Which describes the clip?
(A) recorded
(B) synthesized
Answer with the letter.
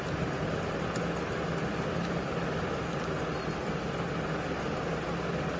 A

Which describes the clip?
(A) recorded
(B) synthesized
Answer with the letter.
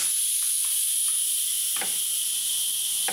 A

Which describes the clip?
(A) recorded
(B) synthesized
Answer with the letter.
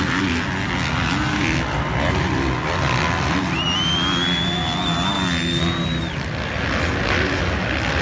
A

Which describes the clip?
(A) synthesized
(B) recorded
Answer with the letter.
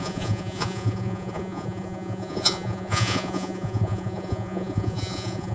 A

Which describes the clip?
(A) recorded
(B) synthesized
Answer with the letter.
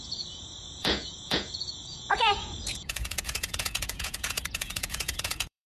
B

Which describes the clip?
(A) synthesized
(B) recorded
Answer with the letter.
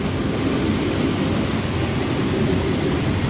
B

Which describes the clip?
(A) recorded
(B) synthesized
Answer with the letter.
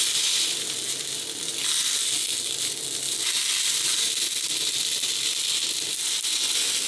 A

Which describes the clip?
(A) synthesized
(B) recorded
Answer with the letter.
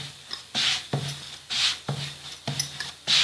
B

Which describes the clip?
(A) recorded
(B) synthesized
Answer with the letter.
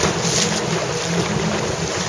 A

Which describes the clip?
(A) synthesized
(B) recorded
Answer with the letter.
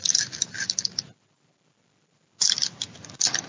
B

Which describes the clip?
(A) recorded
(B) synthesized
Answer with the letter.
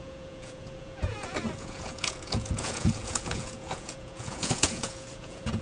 B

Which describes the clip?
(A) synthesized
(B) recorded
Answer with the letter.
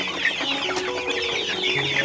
B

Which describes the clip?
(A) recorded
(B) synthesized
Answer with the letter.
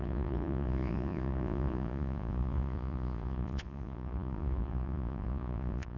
B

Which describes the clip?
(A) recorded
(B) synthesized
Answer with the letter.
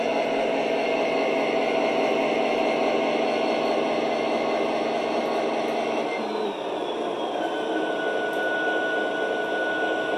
A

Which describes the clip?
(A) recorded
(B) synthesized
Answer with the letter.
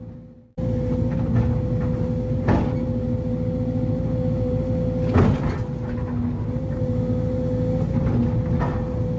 A